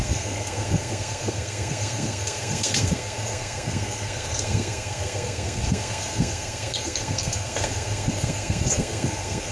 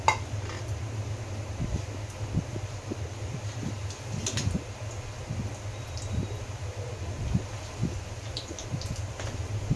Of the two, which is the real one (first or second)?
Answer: second